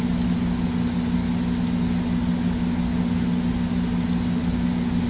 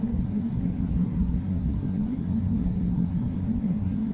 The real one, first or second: first